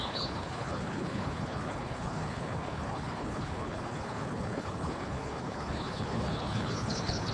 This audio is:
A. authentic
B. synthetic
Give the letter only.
B